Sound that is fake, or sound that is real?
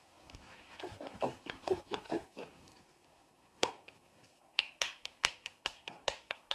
fake